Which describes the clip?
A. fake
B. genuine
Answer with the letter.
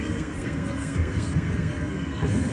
A